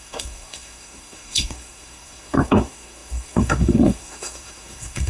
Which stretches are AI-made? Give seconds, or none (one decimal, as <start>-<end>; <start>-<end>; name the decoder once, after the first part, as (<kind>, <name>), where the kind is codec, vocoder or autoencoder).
0.0-5.1 (codec, SNAC)